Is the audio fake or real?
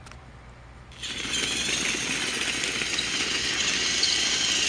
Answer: real